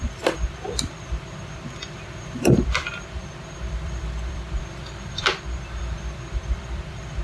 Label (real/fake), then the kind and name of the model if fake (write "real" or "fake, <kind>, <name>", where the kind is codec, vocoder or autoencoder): fake, vocoder, BigVGAN v2